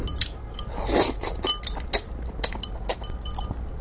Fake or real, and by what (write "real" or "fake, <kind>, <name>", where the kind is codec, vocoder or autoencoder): real